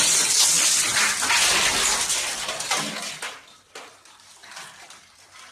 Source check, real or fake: real